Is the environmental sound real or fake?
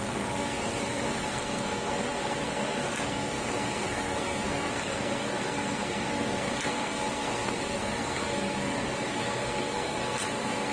fake